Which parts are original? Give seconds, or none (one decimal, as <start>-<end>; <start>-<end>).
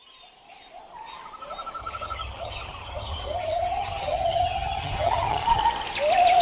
0.0-1.8; 5.6-6.4